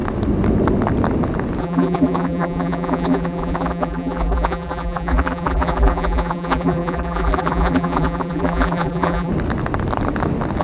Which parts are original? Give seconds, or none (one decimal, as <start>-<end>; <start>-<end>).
0.0-1.6; 9.3-10.6